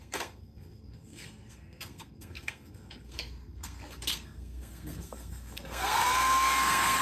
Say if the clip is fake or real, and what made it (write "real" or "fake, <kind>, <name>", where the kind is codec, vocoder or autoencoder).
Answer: fake, codec, SNAC